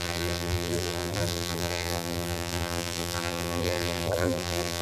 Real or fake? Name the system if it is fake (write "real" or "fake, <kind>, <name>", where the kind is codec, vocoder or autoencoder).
fake, vocoder, BigVGAN v2